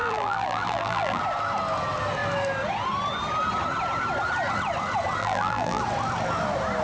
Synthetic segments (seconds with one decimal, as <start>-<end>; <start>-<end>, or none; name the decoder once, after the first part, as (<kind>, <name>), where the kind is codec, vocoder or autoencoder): 0.0-1.2 (vocoder, BigVGAN v2); 5.2-5.8